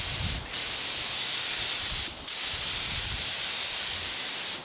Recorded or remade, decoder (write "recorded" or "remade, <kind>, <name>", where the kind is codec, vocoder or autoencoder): recorded